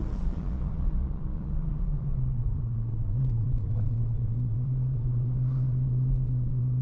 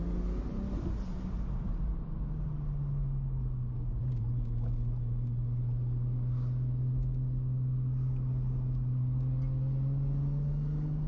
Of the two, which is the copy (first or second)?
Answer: first